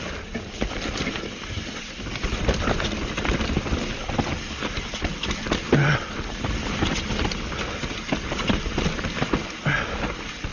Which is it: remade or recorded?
recorded